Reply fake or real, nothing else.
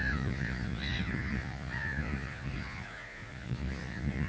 fake